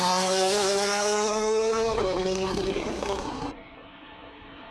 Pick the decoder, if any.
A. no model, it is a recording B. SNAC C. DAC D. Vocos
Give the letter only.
B